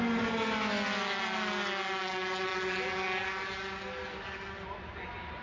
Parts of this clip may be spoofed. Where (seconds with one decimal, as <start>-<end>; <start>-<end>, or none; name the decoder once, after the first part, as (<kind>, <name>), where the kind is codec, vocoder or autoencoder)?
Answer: none